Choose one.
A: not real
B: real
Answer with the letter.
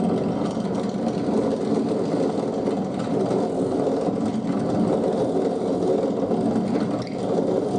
B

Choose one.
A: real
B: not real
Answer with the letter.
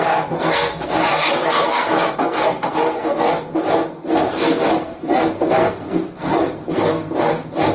B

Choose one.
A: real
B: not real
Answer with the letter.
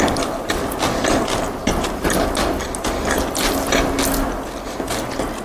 A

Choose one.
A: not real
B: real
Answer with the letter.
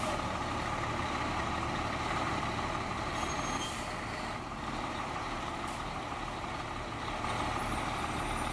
B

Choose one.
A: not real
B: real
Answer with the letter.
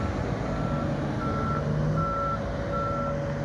B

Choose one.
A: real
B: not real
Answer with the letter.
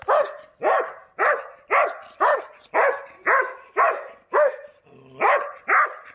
A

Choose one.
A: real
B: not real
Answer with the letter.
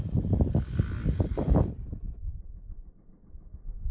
A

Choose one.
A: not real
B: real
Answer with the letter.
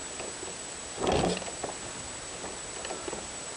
A